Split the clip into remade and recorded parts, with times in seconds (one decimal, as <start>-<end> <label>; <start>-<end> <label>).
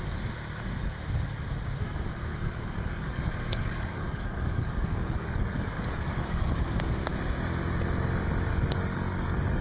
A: 0.0-2.3 recorded; 2.3-6.6 remade; 6.6-8.5 recorded; 8.5-9.6 remade